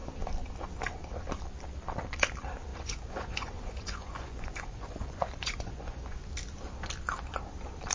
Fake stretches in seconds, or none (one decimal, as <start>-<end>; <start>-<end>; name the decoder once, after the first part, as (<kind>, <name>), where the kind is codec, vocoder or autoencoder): 2.7-6.2 (vocoder, Vocos)